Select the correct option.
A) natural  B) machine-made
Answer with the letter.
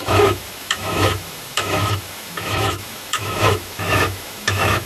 B